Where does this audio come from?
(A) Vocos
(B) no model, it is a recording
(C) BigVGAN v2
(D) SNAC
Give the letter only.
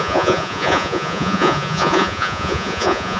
A